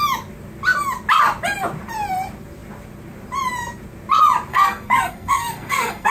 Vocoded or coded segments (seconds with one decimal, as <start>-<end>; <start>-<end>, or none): 4.5-6.1